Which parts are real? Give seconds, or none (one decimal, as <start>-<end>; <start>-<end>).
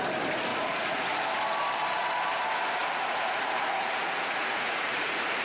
0.0-0.5; 1.2-2.8